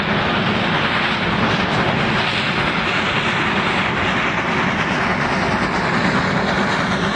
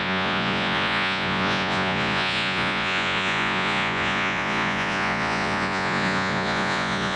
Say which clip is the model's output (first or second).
second